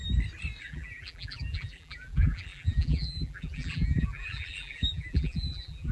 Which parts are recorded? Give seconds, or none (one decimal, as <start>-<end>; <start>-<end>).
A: 0.0-0.6